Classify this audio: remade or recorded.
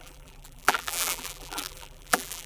remade